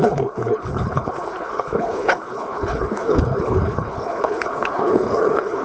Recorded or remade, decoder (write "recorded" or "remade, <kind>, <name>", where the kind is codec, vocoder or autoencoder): remade, codec, HILCodec